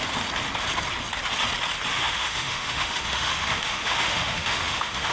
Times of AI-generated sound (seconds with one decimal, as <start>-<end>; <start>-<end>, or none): 1.9-5.1